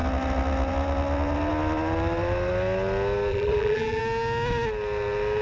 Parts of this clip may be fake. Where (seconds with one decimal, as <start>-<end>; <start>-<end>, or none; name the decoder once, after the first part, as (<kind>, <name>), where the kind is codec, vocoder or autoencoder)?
3.3-4.0 (vocoder, BigVGAN v2)